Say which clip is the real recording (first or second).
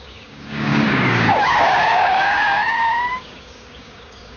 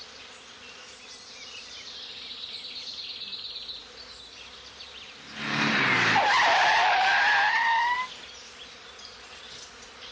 second